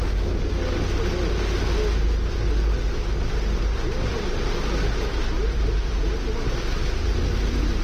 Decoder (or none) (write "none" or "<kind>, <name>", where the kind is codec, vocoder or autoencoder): none